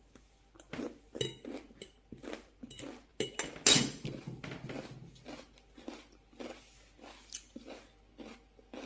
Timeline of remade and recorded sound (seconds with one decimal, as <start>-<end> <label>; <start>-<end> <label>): 0.0-8.9 recorded